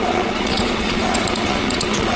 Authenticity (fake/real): fake